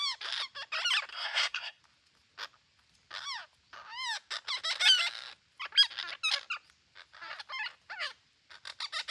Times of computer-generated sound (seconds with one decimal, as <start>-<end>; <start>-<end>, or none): 1.1-1.8